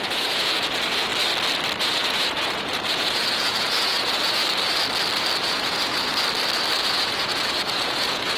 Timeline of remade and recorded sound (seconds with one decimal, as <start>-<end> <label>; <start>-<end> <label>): 0.0-1.1 remade; 1.1-1.8 recorded; 1.8-4.4 remade; 4.4-5.4 recorded; 5.4-6.1 remade; 6.1-6.8 recorded; 6.8-8.4 remade